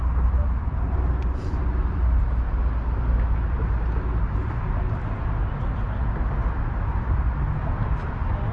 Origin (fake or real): real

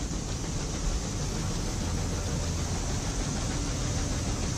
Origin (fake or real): real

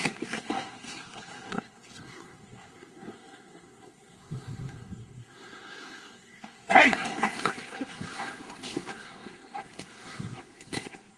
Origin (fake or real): fake